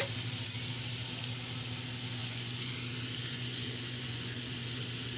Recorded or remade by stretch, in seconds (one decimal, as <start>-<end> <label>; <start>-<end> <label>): 0.0-2.2 recorded; 2.2-2.7 remade; 2.7-3.2 recorded; 3.2-4.8 remade; 4.8-5.2 recorded